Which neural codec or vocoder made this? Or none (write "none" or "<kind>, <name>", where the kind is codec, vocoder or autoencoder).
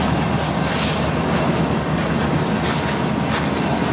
none